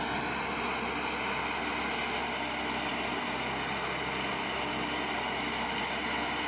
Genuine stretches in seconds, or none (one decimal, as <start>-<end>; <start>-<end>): 0.0-6.5